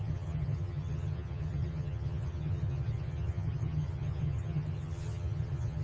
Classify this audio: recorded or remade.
remade